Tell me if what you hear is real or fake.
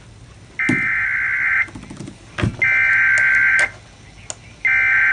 real